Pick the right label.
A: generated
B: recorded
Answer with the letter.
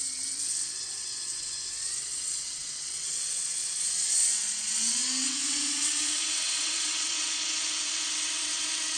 A